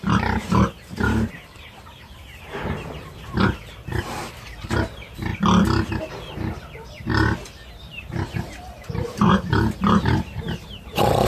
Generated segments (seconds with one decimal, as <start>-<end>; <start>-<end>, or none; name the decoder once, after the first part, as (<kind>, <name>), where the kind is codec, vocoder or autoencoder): 0.0-5.3 (vocoder, BigVGAN v2); 6.1-7.1; 7.7-11.3